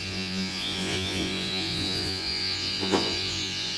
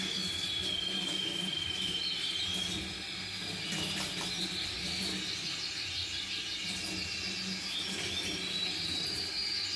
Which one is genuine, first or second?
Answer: second